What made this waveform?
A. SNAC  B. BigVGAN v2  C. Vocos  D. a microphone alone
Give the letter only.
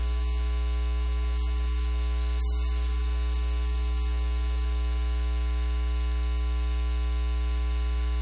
D